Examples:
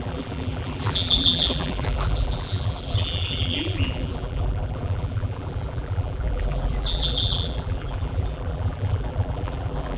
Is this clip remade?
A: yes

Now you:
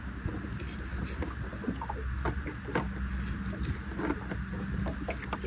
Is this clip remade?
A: no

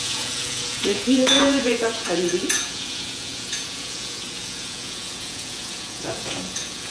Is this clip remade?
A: yes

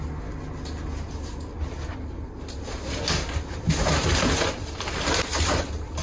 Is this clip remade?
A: no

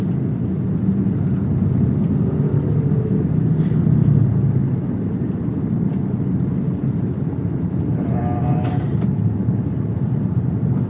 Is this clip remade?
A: no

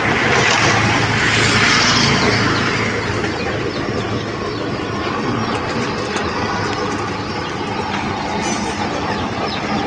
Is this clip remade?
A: no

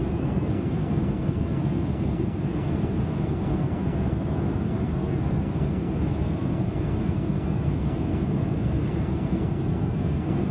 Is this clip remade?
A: yes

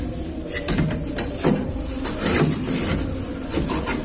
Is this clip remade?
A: yes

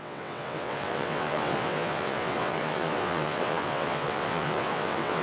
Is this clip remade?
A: yes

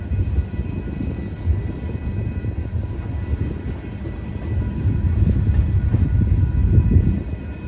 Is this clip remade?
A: no